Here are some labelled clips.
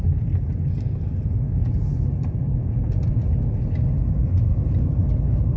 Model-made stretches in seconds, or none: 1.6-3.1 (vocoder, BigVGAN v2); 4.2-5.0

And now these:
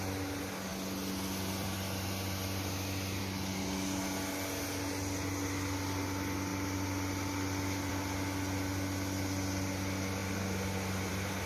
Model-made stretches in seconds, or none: none

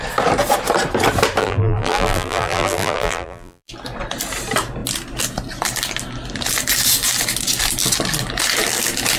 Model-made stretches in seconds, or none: 1.4-3.7 (vocoder, BigVGAN v2)